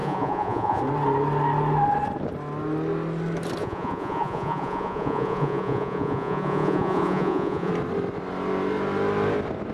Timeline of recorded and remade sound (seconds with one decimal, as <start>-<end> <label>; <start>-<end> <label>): 0.0-0.8 remade; 0.8-3.6 recorded; 3.6-7.7 remade; 7.7-9.7 recorded